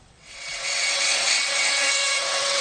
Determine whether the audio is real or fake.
fake